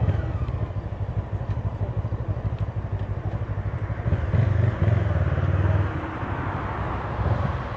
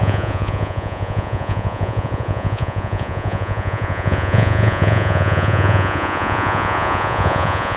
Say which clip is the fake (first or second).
second